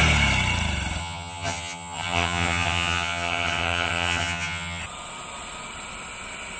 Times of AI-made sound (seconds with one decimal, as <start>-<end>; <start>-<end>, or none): 1.0-4.8